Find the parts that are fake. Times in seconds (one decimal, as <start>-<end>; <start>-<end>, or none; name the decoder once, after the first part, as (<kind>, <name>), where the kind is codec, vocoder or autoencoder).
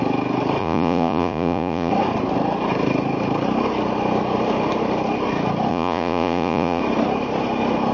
0.6-1.9 (vocoder, Vocos); 5.7-6.8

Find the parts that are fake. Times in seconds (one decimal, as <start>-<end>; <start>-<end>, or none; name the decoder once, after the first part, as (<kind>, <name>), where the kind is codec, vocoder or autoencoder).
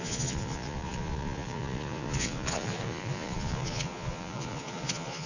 0.0-5.3 (vocoder, Vocos)